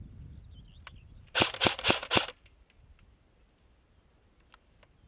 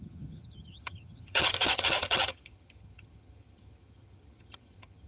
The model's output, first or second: second